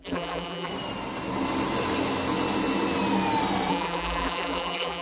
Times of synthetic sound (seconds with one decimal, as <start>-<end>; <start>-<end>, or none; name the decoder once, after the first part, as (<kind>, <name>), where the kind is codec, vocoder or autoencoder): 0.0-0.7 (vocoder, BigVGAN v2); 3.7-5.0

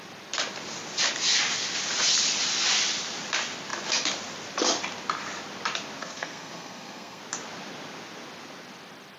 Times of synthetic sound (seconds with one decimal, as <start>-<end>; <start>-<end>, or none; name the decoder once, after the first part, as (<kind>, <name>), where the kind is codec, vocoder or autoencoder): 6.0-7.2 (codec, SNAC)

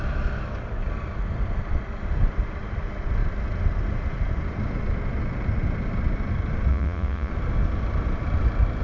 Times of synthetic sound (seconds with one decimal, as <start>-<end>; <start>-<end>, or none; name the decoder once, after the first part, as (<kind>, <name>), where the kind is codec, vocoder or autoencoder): 6.7-7.3 (vocoder, Vocos)

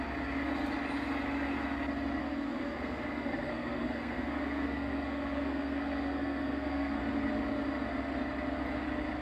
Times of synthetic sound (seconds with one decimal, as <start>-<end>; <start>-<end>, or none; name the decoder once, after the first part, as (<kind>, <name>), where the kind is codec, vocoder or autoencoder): 2.2-7.0 (codec, SNAC)

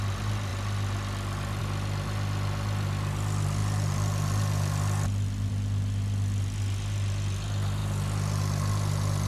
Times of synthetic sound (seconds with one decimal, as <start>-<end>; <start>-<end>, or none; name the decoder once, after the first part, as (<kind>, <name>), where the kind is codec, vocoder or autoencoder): 3.6-5.5 (vocoder, BigVGAN v2)

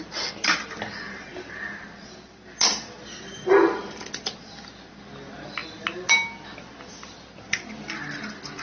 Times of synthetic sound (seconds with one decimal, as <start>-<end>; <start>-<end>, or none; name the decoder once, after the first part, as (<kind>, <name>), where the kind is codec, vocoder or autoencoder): none

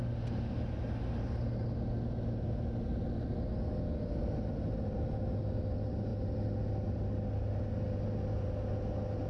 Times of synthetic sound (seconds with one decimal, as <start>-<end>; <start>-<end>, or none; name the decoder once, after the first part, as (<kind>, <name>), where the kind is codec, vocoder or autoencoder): none

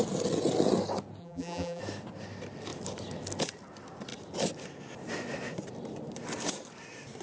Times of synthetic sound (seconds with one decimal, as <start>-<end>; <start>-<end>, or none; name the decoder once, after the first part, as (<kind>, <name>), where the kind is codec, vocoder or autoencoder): 1.2-1.8 (vocoder, BigVGAN v2)